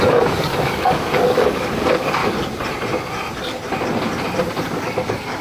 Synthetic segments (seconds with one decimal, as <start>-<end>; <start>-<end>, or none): 0.0-2.2; 4.7-5.4